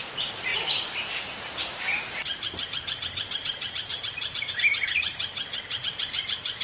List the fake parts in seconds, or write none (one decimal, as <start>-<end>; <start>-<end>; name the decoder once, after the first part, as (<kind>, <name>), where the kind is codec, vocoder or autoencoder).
0.0-6.6 (vocoder, BigVGAN v2)